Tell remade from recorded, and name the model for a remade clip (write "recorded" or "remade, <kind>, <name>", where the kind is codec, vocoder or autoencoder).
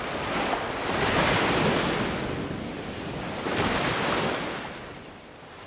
recorded